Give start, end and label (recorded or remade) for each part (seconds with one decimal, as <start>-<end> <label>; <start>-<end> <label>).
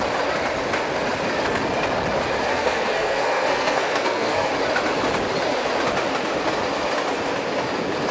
0.0-2.5 recorded; 2.5-4.5 remade; 4.5-8.1 recorded